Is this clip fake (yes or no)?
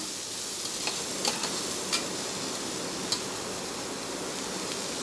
no